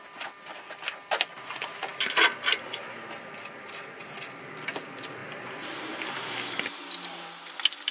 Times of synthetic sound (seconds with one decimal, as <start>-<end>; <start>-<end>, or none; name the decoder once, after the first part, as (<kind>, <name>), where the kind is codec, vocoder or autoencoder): none